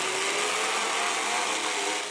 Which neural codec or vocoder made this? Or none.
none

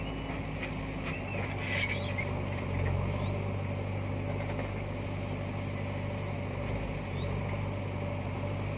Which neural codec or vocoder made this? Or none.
none